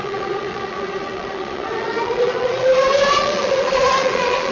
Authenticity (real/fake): fake